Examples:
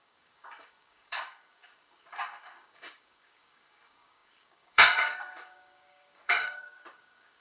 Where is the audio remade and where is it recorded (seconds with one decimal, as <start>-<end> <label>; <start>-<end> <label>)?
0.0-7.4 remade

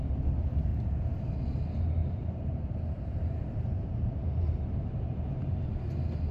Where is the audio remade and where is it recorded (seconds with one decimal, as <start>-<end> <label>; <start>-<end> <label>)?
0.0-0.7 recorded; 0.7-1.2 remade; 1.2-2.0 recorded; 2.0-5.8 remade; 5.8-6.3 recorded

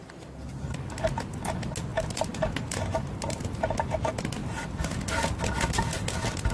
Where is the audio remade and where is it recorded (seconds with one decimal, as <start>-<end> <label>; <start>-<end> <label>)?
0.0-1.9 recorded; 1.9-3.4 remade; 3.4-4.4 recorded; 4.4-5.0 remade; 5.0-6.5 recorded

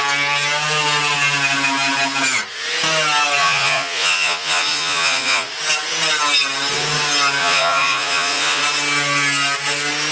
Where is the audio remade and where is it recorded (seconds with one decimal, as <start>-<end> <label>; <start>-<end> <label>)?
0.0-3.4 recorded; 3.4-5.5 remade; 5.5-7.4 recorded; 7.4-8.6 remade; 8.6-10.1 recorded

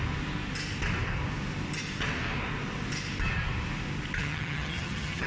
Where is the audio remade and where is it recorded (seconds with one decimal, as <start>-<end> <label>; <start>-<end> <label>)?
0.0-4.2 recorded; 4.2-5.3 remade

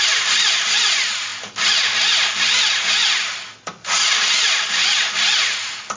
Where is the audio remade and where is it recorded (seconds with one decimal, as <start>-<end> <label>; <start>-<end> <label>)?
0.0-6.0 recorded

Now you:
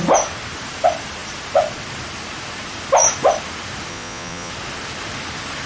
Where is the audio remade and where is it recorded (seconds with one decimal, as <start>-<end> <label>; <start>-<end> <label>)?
0.0-3.9 recorded; 3.9-4.5 remade; 4.5-5.7 recorded

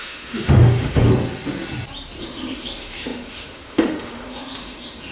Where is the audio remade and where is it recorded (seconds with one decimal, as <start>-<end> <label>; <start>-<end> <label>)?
0.0-1.1 remade; 1.1-2.2 recorded; 2.2-5.1 remade